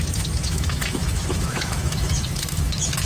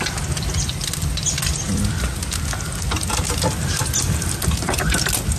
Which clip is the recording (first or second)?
second